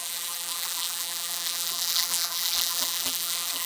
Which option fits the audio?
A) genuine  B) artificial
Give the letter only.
B